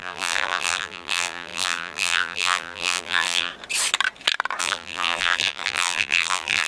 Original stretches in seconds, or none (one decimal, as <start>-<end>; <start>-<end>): 3.5-4.6